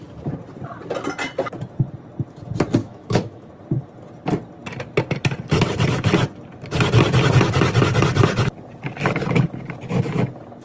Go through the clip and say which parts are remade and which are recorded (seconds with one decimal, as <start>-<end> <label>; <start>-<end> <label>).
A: 0.0-2.8 recorded; 2.8-3.5 remade; 3.5-10.6 recorded